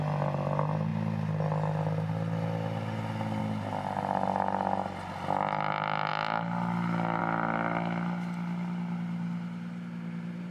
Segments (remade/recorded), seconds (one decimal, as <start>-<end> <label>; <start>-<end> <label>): 0.0-10.5 recorded